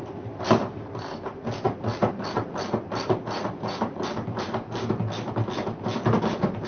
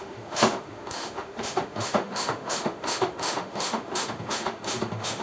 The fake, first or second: second